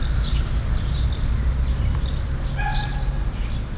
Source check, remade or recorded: recorded